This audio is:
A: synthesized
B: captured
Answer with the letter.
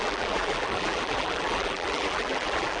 A